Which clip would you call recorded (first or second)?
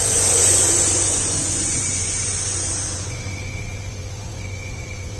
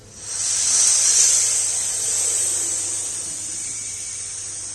second